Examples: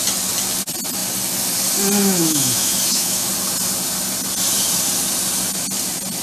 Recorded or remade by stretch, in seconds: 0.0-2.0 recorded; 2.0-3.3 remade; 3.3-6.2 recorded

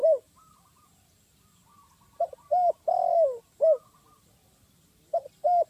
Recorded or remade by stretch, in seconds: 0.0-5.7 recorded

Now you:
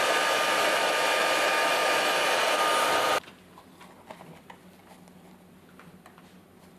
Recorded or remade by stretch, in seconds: 0.0-6.8 recorded